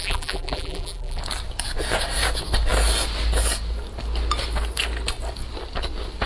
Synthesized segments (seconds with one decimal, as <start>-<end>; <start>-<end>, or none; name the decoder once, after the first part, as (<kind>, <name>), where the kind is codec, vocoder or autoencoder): 0.0-1.2 (vocoder, BigVGAN v2)